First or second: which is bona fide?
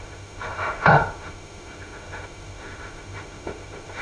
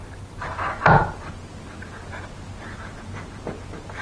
second